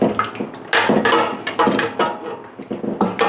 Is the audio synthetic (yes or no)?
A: no